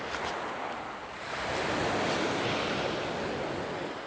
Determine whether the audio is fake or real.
real